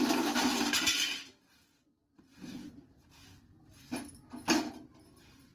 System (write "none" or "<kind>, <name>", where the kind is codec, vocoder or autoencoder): none